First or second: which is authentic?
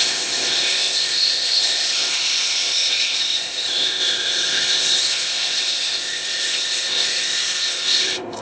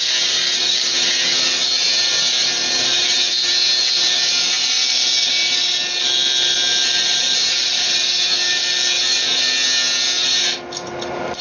second